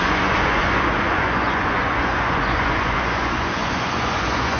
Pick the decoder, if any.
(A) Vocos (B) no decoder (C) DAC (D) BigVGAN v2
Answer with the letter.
A